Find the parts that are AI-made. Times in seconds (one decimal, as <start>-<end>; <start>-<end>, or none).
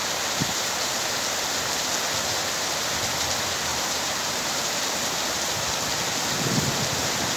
0.0-1.2; 2.4-2.9; 3.7-4.9